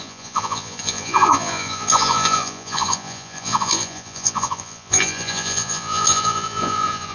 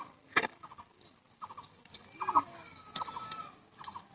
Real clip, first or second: second